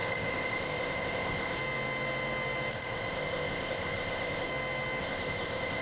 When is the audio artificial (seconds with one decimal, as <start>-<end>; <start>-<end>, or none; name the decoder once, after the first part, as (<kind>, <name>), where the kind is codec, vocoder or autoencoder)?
0.0-1.6 (codec, ZipCodec); 2.7-4.5; 5.0-5.8